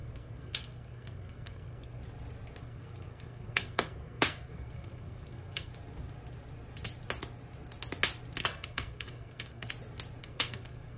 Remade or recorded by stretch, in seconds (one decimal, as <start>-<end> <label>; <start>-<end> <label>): 0.0-2.0 remade; 2.0-2.6 recorded; 2.6-5.7 remade; 5.7-8.4 recorded; 8.4-9.7 remade; 9.7-10.2 recorded; 10.2-11.0 remade